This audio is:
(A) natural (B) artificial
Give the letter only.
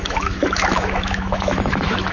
B